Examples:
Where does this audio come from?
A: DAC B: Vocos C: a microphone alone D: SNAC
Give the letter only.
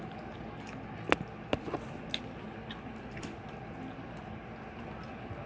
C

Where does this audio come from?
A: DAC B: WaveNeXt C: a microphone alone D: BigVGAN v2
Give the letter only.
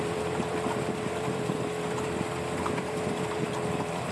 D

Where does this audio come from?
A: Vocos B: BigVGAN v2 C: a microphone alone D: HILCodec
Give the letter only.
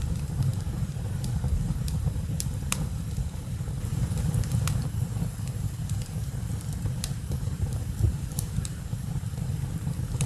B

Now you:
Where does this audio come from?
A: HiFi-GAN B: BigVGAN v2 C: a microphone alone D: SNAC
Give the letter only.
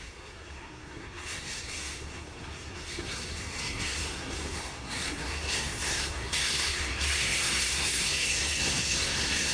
D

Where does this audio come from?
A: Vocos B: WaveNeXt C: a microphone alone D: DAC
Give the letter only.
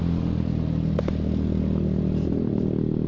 C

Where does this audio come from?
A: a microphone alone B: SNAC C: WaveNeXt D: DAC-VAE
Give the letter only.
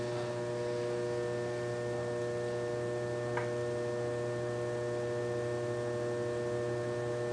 A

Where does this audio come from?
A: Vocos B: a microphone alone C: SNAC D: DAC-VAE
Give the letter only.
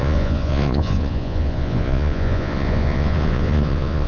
A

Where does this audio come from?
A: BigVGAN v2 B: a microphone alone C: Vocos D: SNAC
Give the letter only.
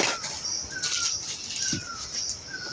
A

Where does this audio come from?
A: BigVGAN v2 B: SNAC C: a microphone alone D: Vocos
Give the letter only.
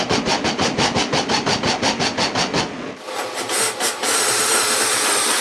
C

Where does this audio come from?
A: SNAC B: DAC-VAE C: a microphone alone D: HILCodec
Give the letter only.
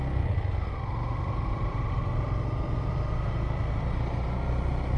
C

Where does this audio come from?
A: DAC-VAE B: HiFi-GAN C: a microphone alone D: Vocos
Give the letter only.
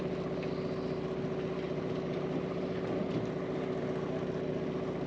C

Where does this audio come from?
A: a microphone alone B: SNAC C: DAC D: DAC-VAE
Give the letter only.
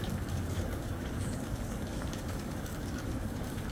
C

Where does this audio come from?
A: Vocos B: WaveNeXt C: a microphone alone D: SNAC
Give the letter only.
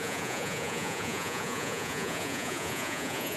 A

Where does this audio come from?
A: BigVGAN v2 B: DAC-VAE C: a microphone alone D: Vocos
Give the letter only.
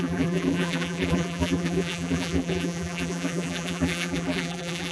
A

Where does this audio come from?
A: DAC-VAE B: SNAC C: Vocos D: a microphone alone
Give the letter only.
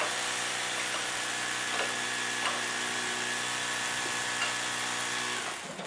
D